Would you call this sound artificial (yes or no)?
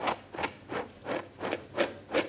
yes